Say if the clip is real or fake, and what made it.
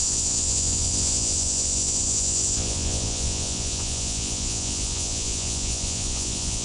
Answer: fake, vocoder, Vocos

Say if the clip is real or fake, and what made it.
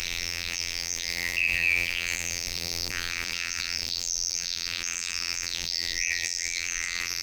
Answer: fake, vocoder, BigVGAN v2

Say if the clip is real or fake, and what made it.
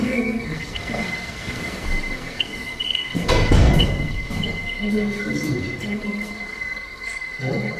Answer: fake, codec, SNAC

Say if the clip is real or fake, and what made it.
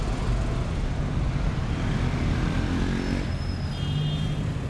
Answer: real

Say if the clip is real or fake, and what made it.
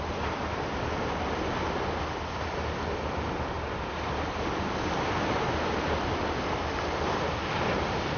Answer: real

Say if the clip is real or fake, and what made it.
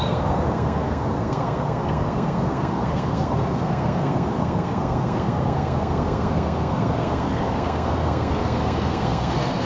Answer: fake, codec, SNAC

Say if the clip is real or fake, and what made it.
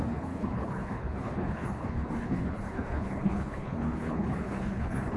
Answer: fake, codec, HILCodec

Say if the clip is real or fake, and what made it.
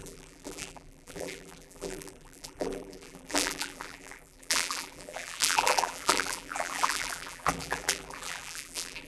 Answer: fake, vocoder, BigVGAN v2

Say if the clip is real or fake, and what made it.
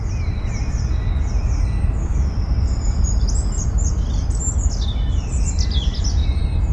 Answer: real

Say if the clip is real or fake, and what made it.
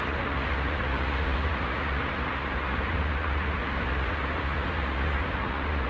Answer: fake, vocoder, Vocos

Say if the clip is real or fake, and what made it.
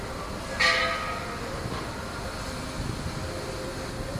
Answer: real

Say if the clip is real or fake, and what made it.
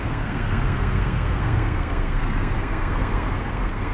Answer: fake, codec, SNAC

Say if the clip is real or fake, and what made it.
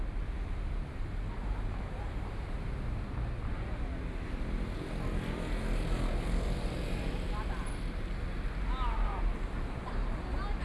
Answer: real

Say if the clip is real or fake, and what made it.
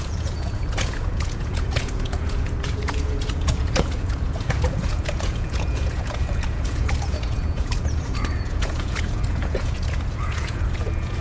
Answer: fake, vocoder, Vocos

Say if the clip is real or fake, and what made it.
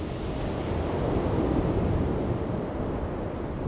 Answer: real